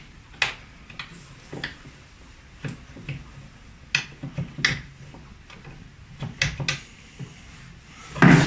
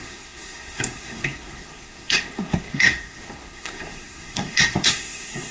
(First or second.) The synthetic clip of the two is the second